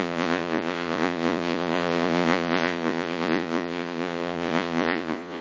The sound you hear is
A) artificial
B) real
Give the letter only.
A